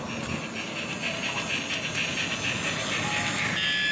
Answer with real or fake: real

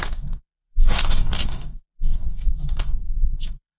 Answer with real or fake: fake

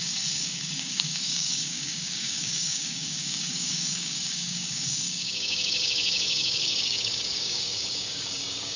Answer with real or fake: fake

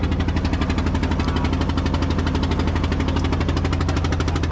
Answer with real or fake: real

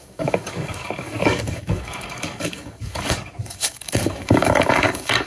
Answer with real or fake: fake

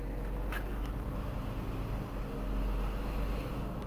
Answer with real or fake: real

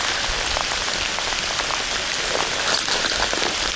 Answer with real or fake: real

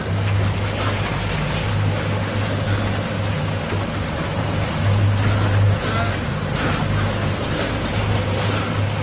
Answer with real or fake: real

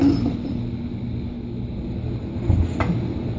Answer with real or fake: real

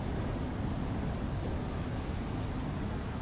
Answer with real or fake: real